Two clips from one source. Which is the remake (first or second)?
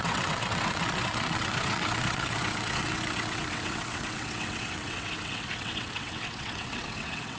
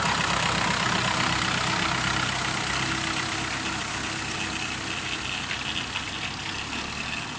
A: first